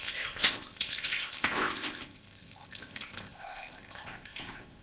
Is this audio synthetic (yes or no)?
yes